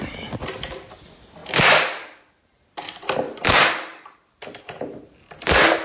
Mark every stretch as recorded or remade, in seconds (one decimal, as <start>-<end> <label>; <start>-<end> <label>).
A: 0.0-5.8 recorded